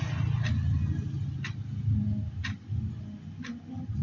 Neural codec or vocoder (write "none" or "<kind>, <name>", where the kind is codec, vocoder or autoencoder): none